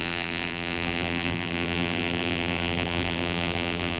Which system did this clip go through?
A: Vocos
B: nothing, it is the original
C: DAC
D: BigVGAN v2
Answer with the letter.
D